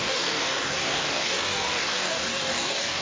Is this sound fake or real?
fake